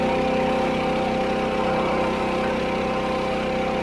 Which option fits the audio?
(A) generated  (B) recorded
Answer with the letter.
B